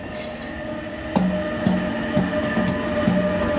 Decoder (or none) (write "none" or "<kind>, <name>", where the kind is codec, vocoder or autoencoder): none